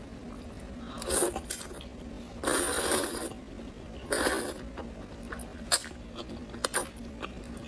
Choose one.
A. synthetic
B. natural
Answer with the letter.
B